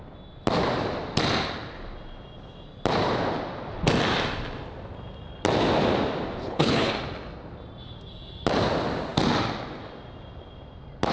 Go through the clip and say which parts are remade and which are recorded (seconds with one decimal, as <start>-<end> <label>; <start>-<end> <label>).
0.0-6.4 recorded; 6.4-6.9 remade; 6.9-11.1 recorded